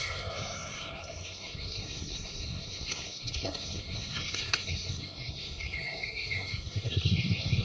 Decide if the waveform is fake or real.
fake